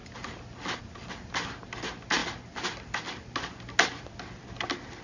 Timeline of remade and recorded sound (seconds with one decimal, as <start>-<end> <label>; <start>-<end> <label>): 0.0-5.0 recorded